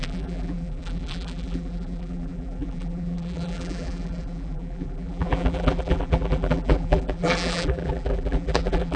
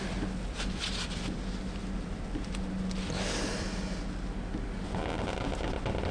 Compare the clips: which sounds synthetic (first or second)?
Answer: first